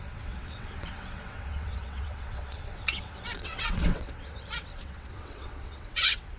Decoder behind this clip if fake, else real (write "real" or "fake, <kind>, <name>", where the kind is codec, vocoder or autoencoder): fake, vocoder, WaveNeXt